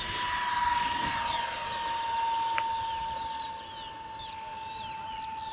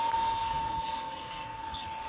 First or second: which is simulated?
second